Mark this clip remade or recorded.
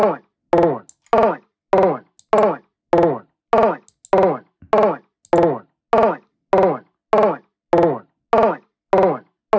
recorded